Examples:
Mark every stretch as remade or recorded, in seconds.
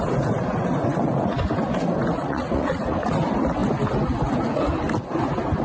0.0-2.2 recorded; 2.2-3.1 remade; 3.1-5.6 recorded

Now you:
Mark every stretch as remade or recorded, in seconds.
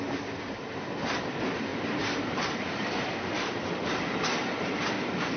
0.0-1.7 recorded; 1.7-3.7 remade; 3.7-5.4 recorded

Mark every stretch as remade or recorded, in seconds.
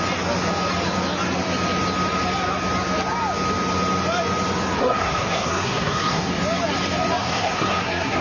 0.0-4.8 recorded; 4.8-6.3 remade; 6.3-7.2 recorded; 7.2-8.2 remade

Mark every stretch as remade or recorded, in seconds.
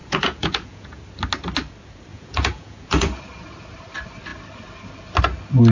0.0-1.0 remade; 1.0-2.1 recorded; 2.1-3.2 remade; 3.2-5.7 recorded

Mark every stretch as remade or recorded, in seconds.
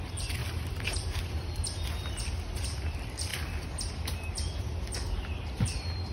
0.0-0.4 recorded; 0.4-1.2 remade; 1.2-6.1 recorded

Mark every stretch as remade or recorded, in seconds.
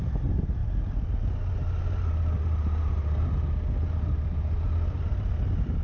0.0-0.6 remade; 0.6-4.1 recorded; 4.1-5.8 remade